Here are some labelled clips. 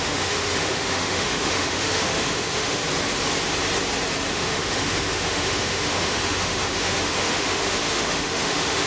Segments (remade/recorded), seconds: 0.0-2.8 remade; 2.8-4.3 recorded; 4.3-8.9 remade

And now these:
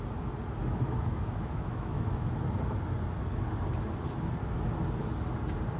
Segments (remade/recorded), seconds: 0.0-0.6 recorded; 0.6-2.3 remade; 2.3-5.8 recorded